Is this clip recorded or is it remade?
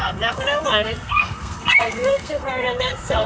remade